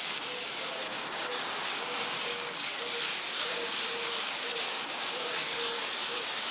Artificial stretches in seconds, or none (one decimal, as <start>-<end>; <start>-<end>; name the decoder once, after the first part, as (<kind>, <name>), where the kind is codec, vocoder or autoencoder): 0.0-2.7 (codec, DAC); 3.3-6.5